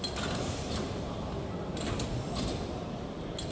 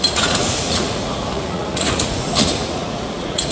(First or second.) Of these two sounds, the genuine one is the first